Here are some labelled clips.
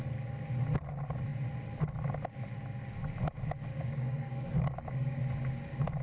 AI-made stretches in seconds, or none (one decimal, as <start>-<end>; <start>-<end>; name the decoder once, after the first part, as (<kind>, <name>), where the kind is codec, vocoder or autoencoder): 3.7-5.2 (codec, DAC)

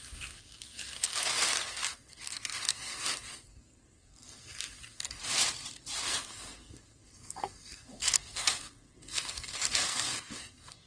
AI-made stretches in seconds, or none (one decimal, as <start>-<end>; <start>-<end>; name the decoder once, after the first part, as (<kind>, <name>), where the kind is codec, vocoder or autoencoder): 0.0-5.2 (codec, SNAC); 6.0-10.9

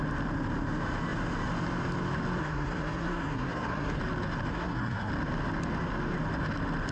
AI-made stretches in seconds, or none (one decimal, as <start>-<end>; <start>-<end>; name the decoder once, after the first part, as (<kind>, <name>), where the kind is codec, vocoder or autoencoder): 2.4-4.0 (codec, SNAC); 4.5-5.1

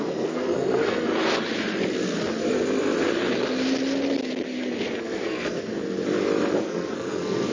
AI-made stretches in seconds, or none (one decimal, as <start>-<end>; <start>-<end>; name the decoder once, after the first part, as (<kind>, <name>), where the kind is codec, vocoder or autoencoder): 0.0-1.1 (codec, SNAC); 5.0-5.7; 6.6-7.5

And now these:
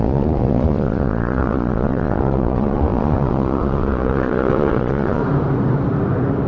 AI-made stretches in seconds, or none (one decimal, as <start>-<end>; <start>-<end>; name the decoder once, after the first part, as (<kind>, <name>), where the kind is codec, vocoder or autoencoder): 0.0-5.2 (vocoder, Vocos)